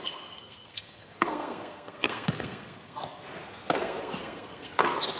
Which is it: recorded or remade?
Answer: remade